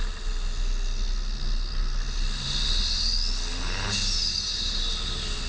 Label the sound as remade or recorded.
recorded